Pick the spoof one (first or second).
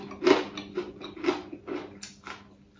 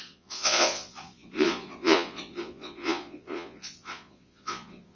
second